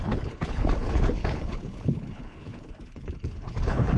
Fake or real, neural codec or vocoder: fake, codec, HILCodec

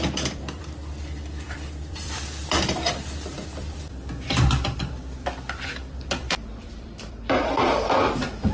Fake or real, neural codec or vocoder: fake, vocoder, BigVGAN v2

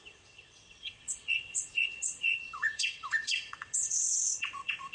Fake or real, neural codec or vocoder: fake, vocoder, WaveNeXt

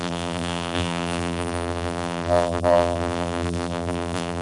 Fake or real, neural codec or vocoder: fake, vocoder, BigVGAN v2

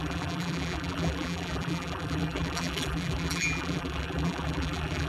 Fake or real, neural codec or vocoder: fake, vocoder, BigVGAN v2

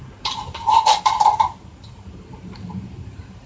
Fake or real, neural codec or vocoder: fake, vocoder, BigVGAN v2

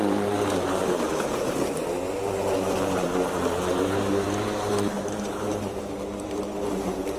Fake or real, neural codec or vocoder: fake, vocoder, BigVGAN v2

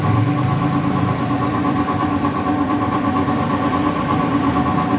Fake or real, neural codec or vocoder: fake, vocoder, BigVGAN v2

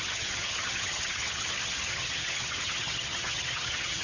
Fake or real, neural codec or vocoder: fake, vocoder, HiFi-GAN